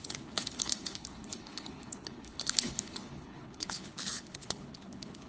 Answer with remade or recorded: remade